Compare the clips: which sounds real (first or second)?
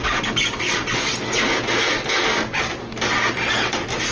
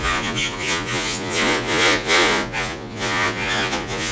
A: first